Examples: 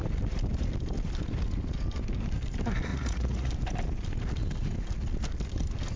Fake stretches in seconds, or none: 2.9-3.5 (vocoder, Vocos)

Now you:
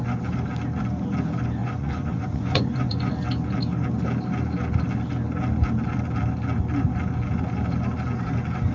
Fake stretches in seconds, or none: 1.6-3.1 (vocoder, Vocos)

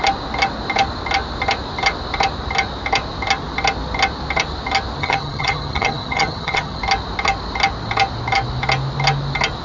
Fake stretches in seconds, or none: 5.0-6.8 (vocoder, HiFi-GAN)

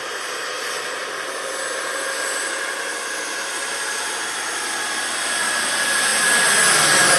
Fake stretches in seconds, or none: none

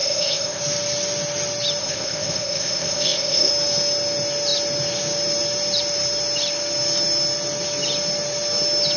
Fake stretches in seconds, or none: 0.0-0.6 (codec, ZipCodec); 1.8-3.5